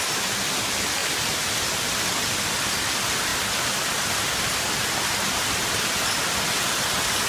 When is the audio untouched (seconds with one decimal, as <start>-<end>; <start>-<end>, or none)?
0.0-7.3